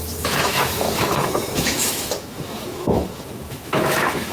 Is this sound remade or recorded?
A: remade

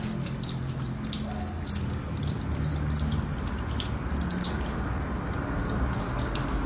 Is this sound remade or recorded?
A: recorded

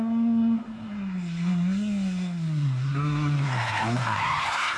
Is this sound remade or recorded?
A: remade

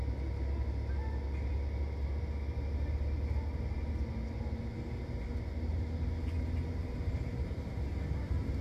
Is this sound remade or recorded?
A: recorded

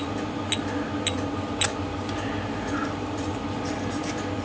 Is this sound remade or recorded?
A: recorded